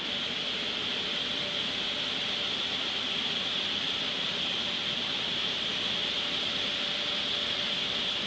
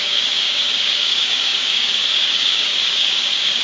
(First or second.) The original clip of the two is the first